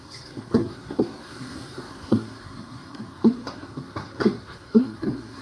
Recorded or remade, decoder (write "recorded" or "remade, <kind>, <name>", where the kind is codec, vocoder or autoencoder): remade, codec, SNAC